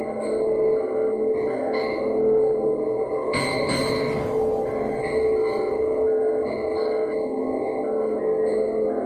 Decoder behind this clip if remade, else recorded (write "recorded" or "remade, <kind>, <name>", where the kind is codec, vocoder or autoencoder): recorded